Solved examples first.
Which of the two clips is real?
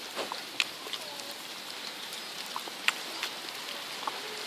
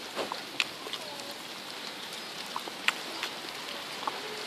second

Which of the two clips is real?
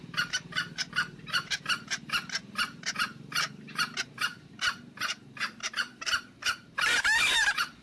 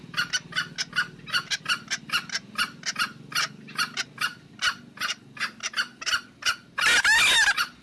second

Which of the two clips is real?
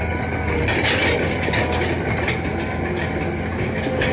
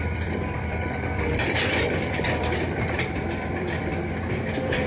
first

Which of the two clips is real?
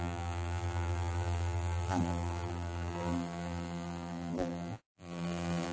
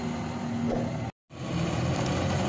second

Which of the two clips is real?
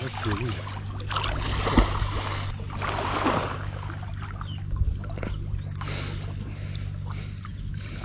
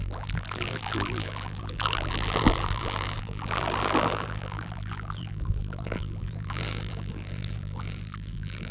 first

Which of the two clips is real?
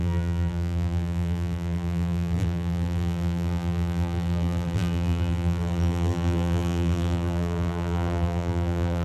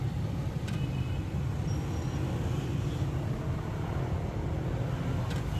second